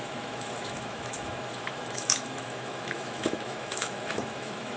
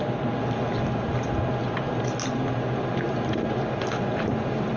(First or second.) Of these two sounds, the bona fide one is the second